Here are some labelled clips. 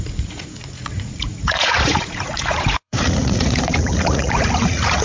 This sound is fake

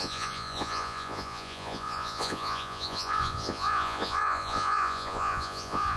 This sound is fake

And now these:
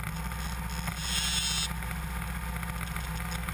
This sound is real